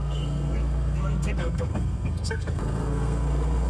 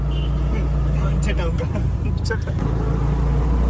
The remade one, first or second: first